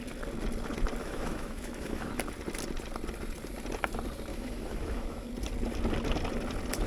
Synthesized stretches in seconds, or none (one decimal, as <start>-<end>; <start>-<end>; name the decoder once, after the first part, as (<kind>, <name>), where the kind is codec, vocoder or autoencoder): 1.0-2.1 (autoencoder, DAC-VAE); 4.3-5.3